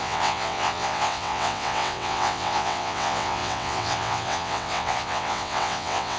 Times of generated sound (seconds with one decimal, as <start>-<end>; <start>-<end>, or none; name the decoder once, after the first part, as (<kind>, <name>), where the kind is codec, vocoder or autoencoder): 0.0-6.2 (vocoder, WaveNeXt)